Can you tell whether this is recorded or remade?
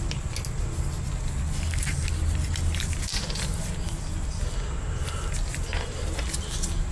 recorded